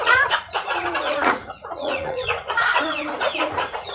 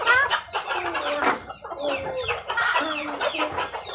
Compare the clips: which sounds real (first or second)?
second